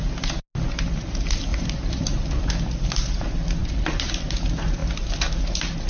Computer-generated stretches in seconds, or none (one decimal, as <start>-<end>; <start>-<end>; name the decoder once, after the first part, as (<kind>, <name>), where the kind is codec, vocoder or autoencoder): 1.5-2.5 (vocoder, BigVGAN v2); 3.6-4.1